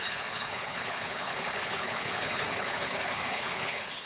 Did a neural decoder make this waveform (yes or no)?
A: yes